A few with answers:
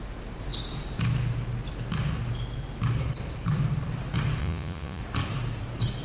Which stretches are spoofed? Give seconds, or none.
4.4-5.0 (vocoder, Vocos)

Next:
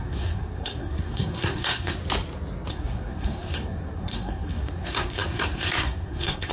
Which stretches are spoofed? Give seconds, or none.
0.0-2.0 (codec, SNAC); 2.7-6.5

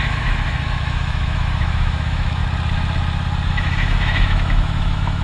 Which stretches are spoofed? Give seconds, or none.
0.0-2.4 (autoencoder, DAC-VAE); 3.5-5.2

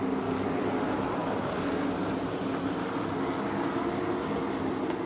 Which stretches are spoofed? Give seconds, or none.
none